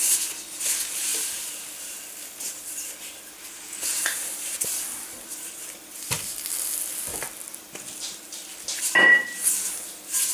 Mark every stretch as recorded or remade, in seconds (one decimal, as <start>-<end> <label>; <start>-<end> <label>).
0.0-3.9 recorded; 3.9-4.7 remade; 4.7-10.3 recorded